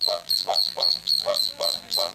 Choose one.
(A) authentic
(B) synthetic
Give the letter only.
B